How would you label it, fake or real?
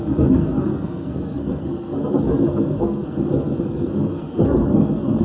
fake